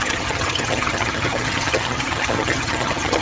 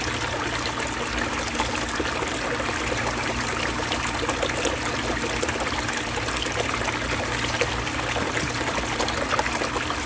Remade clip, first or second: first